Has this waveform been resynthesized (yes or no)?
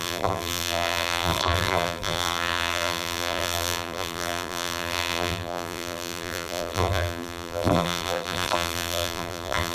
yes